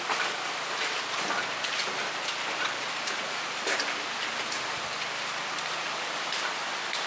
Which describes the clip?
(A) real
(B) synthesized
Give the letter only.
B